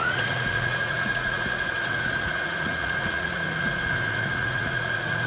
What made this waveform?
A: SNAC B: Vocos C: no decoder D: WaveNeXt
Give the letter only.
B